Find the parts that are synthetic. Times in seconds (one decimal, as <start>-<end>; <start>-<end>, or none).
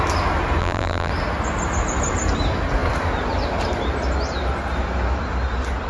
0.6-1.1